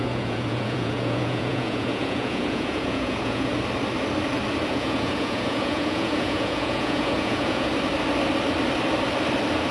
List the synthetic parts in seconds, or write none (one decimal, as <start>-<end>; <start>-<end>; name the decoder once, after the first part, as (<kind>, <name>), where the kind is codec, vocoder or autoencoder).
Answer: 0.0-3.5 (vocoder, Vocos); 4.7-7.7